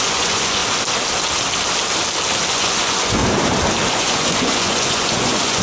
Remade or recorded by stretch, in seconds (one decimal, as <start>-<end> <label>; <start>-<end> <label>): 0.0-0.6 remade; 0.6-2.5 recorded; 2.5-3.2 remade; 3.2-3.9 recorded; 3.9-5.6 remade